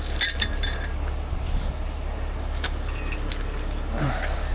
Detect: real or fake real